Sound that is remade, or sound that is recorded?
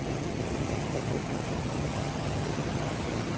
remade